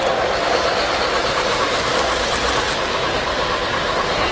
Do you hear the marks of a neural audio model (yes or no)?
no